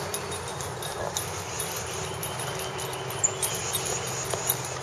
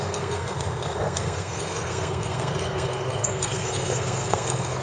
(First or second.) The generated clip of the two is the second